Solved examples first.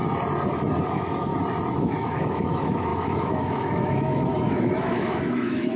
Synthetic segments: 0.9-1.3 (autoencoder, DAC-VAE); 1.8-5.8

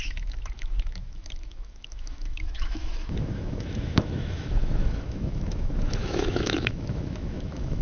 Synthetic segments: 0.0-7.8 (autoencoder, DAC-VAE)

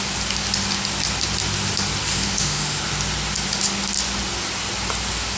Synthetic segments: 2.1-2.8 (autoencoder, DAC-VAE)

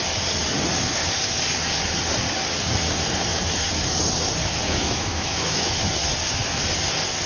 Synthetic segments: 4.4-5.8 (autoencoder, DAC-VAE)

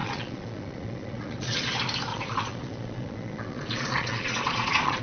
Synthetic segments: 0.0-1.7 (vocoder, Vocos); 2.1-5.0